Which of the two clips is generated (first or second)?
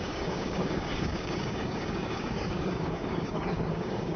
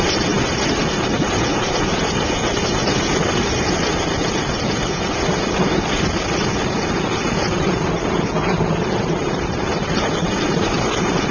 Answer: first